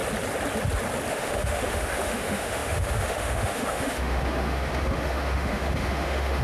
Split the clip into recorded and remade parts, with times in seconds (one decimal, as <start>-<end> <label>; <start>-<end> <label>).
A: 0.0-1.1 recorded; 1.1-6.4 remade

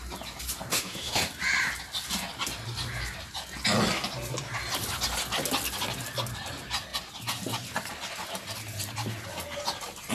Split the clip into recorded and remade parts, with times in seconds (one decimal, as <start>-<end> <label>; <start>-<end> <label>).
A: 0.0-0.7 recorded; 0.7-1.2 remade; 1.2-10.1 recorded

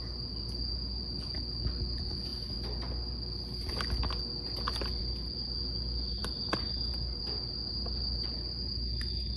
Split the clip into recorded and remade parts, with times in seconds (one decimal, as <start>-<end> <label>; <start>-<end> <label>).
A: 0.0-9.4 recorded

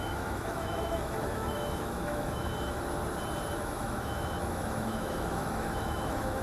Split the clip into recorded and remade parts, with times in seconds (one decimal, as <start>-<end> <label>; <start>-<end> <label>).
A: 0.0-2.5 remade; 2.5-3.6 recorded; 3.6-6.4 remade

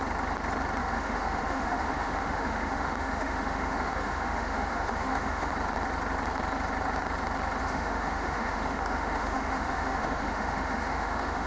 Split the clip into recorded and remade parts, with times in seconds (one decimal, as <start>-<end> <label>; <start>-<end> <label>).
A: 0.0-0.8 recorded; 0.8-5.5 remade; 5.5-7.6 recorded; 7.6-11.5 remade

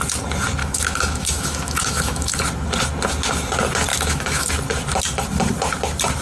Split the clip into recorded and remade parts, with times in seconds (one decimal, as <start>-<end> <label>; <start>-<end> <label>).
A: 0.0-0.6 recorded; 0.6-2.4 remade; 2.4-3.9 recorded; 3.9-4.5 remade; 4.5-6.2 recorded

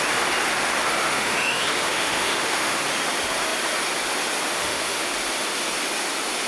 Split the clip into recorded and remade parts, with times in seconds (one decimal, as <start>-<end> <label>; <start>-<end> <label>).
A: 0.0-1.0 recorded; 1.0-2.8 remade; 2.8-4.6 recorded; 4.6-5.1 remade; 5.1-6.5 recorded